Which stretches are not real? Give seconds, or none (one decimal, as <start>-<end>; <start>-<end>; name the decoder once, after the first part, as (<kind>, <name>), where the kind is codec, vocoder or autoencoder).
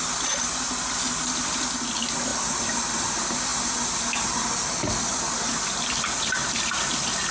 none